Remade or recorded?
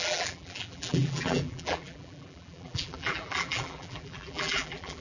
remade